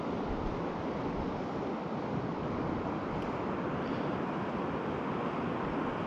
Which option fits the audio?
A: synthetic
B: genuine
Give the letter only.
B